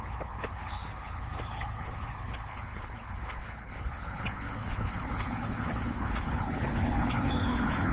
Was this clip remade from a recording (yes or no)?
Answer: yes